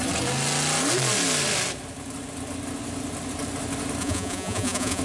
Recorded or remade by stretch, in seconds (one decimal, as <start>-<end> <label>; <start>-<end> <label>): 0.0-4.0 recorded; 4.0-5.0 remade